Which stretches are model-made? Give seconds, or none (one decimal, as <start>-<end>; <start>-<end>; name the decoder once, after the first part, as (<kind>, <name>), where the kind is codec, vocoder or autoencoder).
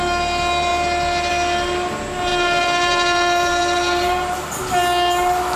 2.3-4.6 (vocoder, BigVGAN v2)